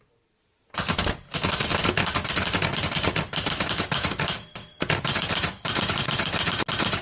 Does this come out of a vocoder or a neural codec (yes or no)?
no